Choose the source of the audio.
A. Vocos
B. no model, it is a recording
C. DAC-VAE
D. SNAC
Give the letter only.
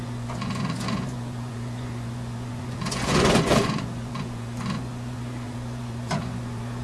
A